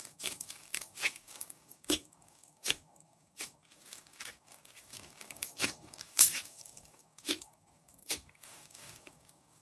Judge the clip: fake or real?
fake